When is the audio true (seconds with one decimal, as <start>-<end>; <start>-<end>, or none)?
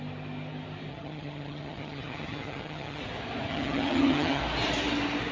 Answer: 0.0-0.9; 3.0-3.5; 4.4-5.3